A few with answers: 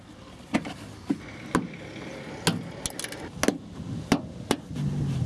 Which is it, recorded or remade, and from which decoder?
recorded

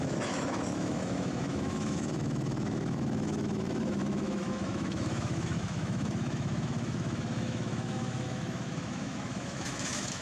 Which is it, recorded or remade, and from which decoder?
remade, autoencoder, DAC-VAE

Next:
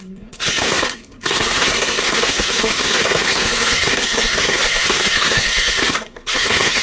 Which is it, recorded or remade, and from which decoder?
remade, codec, SNAC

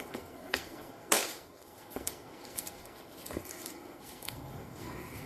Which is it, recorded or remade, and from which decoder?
remade, codec, SNAC